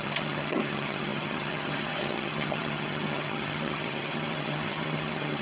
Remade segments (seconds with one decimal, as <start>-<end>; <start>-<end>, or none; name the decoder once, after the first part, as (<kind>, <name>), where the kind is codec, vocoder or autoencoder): 0.0-5.4 (vocoder, HiFi-GAN)

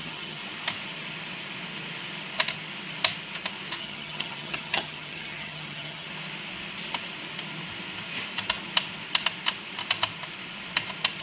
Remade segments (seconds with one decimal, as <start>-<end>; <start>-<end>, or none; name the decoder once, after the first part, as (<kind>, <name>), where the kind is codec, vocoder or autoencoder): 0.0-0.4 (vocoder, HiFi-GAN); 3.8-6.1

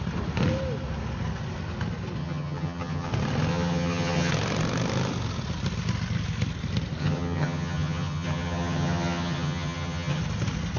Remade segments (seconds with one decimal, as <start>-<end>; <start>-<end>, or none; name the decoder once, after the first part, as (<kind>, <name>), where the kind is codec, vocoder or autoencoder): 2.2-3.1 (vocoder, HiFi-GAN); 3.5-4.3; 7.0-10.2

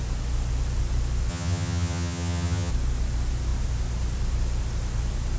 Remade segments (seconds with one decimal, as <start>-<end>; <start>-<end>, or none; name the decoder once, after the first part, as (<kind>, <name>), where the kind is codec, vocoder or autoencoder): 1.3-2.7 (vocoder, HiFi-GAN)

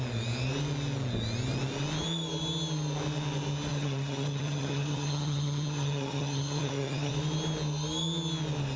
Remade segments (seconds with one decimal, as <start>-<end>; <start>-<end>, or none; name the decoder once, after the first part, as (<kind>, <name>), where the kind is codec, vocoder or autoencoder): 3.7-7.1 (vocoder, HiFi-GAN)